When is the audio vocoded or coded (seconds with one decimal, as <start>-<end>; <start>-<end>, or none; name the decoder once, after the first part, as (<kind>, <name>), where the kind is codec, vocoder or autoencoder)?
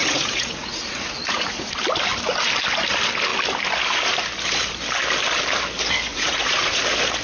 0.0-1.7 (vocoder, Vocos); 6.1-6.8